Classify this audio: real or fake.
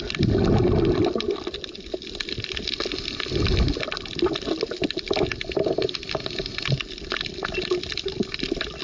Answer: real